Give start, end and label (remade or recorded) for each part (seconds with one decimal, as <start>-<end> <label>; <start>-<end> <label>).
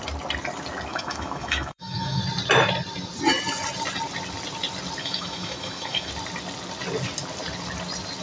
0.0-0.9 recorded; 0.9-2.2 remade; 2.2-5.0 recorded; 5.0-6.1 remade; 6.1-8.2 recorded